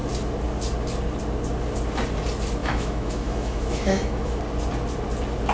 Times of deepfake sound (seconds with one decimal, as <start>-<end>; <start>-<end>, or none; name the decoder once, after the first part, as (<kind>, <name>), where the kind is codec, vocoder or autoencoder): 2.6-4.4 (autoencoder, DAC-VAE)